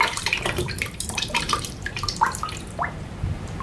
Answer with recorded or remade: remade